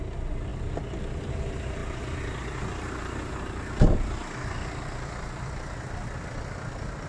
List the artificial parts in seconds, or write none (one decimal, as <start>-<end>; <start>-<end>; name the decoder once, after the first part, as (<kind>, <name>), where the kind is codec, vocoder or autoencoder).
none